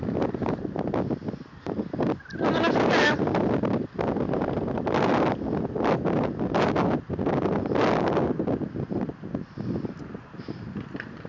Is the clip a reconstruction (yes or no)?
no